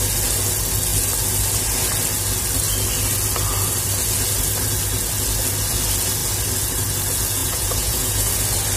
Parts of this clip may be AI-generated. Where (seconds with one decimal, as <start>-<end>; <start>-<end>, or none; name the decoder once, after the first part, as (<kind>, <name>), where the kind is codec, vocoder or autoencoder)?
7.4-8.3 (vocoder, Vocos)